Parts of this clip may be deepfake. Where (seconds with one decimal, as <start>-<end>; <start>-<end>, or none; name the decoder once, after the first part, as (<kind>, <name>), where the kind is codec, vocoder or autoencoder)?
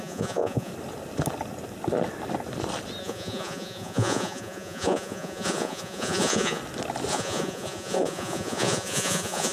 0.0-0.7 (vocoder, Vocos); 3.0-6.6; 7.1-9.5